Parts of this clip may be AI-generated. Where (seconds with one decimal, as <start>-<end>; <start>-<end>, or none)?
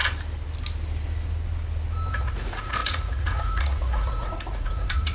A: 2.1-5.1